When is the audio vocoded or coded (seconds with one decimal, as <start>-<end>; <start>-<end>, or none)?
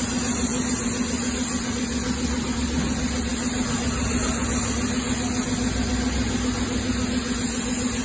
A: none